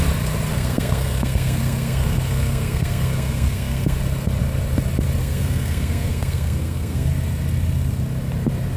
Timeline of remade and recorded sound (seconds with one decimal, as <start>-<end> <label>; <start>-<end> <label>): 0.0-0.5 recorded; 0.5-4.0 remade; 4.0-5.2 recorded; 5.2-7.1 remade; 7.1-8.8 recorded